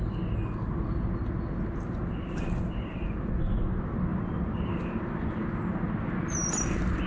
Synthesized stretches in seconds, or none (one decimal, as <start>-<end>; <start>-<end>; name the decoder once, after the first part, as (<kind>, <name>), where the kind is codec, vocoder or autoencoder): none